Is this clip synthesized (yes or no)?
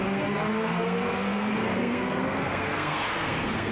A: yes